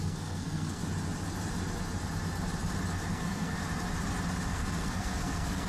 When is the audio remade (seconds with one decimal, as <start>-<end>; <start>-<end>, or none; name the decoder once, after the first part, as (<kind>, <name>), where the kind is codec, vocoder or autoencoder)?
0.0-0.8 (codec, SNAC); 3.1-3.6; 4.5-5.7